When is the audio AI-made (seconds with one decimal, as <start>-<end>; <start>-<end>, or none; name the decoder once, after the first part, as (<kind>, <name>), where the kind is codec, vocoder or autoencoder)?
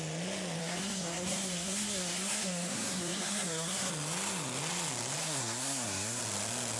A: 0.6-3.9 (codec, SNAC); 5.2-6.2